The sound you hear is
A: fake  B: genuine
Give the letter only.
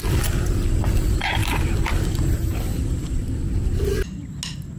B